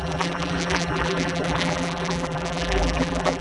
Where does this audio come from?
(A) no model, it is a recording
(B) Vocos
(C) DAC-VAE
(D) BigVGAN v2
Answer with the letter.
D